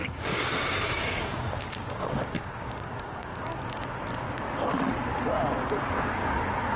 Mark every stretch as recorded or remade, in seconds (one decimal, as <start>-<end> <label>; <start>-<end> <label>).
0.0-3.8 remade; 3.8-6.8 recorded